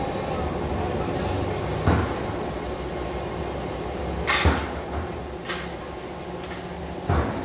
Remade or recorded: recorded